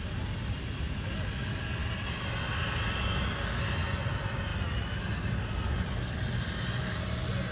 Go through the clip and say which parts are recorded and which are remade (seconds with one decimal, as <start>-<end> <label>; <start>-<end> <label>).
0.0-7.5 recorded